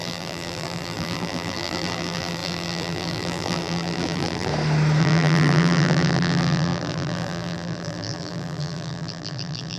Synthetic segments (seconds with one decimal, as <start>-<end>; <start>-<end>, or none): 0.0-4.5; 5.0-9.8